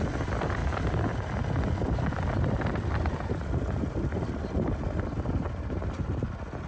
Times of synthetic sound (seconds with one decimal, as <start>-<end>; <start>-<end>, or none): none